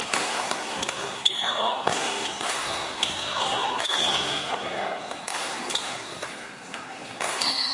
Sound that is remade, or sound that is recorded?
remade